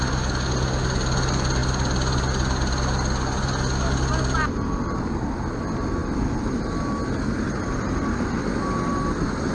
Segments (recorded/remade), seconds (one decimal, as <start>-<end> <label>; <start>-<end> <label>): 0.0-9.5 recorded